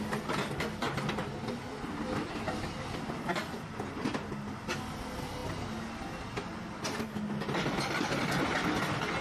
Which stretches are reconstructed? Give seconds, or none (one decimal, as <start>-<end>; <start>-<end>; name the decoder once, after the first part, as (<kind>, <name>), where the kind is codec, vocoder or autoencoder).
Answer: none